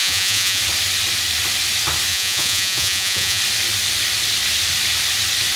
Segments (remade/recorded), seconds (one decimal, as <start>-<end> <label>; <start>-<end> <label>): 0.0-0.6 remade; 0.6-2.1 recorded; 2.1-3.4 remade; 3.4-5.6 recorded